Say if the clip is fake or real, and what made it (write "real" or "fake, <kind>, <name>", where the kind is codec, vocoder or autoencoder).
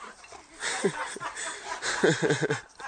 real